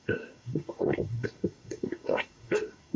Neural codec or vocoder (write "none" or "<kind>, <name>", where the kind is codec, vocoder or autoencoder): codec, SNAC